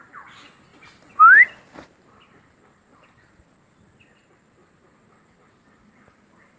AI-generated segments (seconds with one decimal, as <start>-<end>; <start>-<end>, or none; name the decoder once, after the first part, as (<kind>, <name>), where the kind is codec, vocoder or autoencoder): none